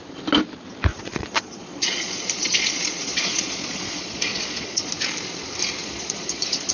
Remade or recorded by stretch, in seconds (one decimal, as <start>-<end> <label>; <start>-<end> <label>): 0.0-0.9 recorded; 0.9-4.9 remade; 4.9-5.8 recorded; 5.8-6.7 remade